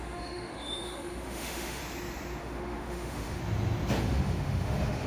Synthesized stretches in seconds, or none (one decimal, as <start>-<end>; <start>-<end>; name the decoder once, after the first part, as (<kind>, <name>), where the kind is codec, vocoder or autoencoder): 0.0-1.8 (autoencoder, DAC-VAE); 2.4-3.4; 4.0-5.1